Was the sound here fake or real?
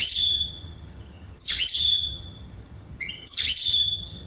fake